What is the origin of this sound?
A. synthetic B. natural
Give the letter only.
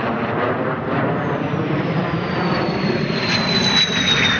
A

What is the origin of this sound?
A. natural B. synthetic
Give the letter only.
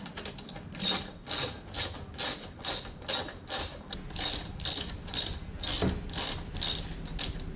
A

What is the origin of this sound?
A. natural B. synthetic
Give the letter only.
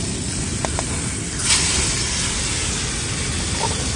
A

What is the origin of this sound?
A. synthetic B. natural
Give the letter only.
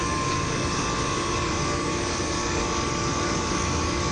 A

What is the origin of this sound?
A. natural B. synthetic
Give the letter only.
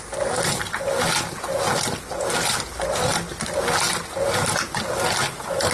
A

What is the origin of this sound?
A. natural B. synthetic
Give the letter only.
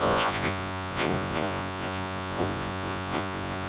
B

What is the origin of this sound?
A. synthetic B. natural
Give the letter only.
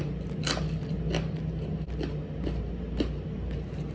B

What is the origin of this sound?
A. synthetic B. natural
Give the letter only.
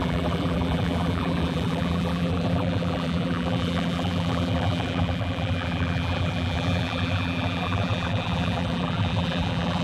A